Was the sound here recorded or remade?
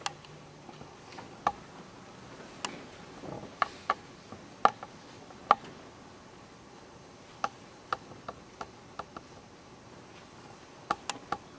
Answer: recorded